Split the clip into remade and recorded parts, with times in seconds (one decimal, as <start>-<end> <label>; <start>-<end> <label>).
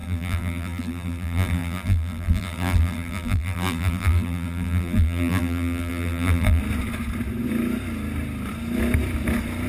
0.0-6.6 remade; 6.6-9.7 recorded